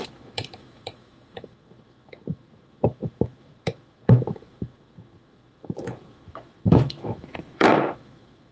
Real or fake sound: fake